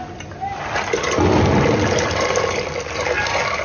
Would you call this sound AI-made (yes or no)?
no